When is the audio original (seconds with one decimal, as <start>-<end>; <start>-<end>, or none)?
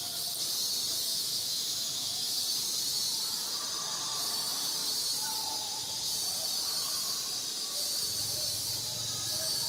0.0-1.1; 2.3-9.7